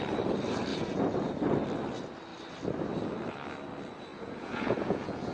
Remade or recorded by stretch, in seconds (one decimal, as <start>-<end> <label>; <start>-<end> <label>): 0.0-0.7 recorded; 0.7-1.3 remade; 1.3-4.1 recorded; 4.1-5.3 remade